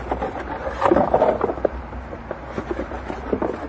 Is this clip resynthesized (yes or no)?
no